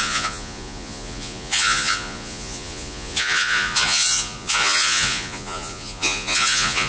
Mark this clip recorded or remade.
remade